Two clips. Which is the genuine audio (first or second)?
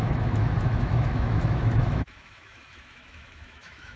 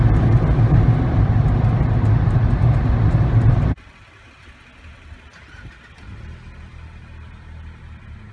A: second